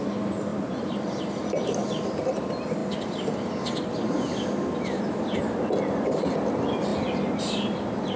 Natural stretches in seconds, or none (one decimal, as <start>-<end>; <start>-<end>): 0.0-0.5; 1.2-2.8; 5.4-6.9; 7.4-8.2